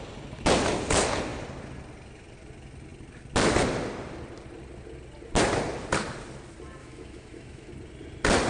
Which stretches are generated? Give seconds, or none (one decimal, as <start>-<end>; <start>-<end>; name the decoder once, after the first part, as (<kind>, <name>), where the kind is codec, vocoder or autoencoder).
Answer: 6.8-7.7 (autoencoder, DAC-VAE)